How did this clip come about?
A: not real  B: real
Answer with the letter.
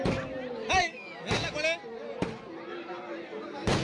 B